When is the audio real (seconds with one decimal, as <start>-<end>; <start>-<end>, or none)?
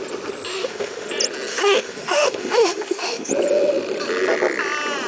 0.0-0.5; 1.1-1.5; 3.3-5.1